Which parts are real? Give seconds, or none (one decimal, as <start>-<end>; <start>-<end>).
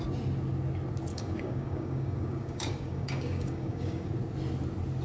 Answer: 0.0-1.1; 4.1-5.0